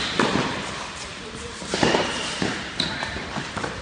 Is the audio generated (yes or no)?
yes